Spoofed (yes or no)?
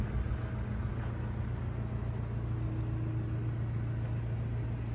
no